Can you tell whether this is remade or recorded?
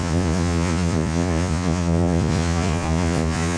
remade